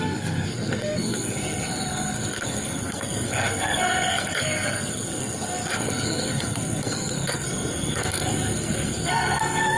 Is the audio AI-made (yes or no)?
yes